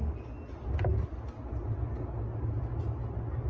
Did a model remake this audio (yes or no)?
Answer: no